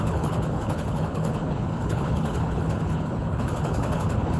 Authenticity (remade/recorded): remade